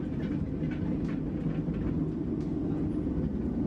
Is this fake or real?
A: real